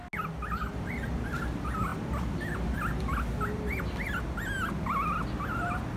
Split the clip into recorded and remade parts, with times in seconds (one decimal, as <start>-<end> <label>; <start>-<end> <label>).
0.0-6.0 recorded